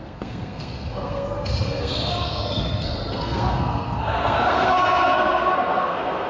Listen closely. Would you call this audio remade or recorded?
remade